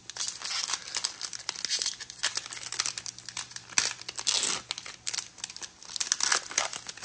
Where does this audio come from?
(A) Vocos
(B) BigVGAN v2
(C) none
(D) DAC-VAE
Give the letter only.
C